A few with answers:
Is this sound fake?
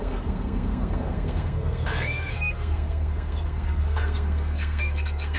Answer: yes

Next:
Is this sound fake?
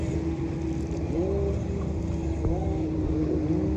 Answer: no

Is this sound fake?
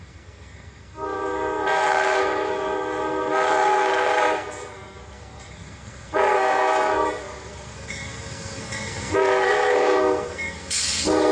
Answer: yes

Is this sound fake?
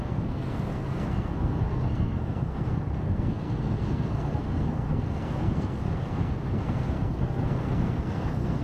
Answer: yes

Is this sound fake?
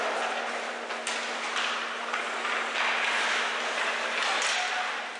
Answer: no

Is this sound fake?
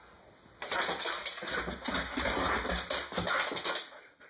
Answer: no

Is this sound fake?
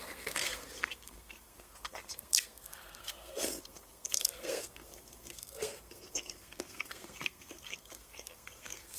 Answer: yes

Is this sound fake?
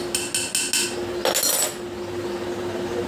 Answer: no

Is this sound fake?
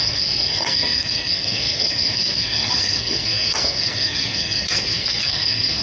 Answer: yes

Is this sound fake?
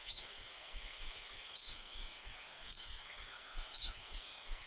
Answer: yes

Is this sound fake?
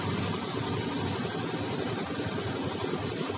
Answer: no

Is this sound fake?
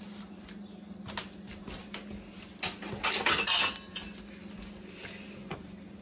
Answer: no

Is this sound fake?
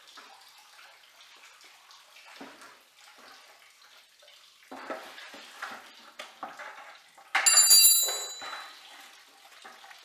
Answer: no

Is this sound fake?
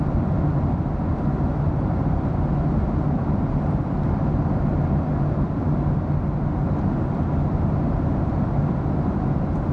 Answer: no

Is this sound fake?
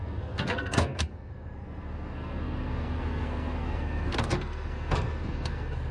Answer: yes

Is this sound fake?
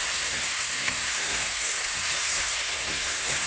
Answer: yes